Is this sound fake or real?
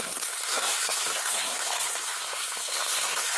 fake